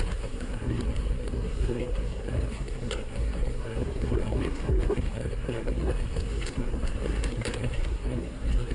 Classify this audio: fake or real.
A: fake